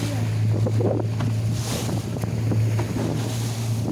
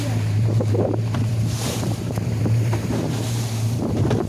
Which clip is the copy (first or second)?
second